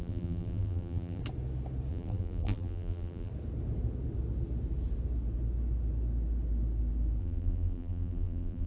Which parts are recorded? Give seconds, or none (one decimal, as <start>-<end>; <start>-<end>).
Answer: 1.2-1.9; 3.3-7.2